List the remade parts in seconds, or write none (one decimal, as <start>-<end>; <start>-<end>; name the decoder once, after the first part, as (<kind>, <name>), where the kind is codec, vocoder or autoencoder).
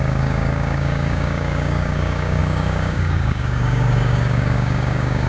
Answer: 0.0-5.3 (codec, DAC)